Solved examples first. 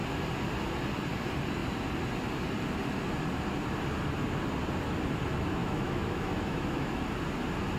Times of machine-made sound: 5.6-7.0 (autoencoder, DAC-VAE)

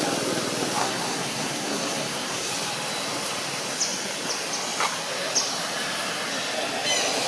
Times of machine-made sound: 0.8-2.5 (codec, SNAC)

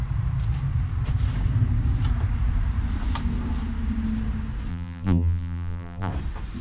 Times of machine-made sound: 4.7-6.1 (vocoder, BigVGAN v2)